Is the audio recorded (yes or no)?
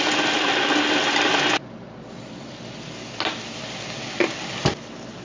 yes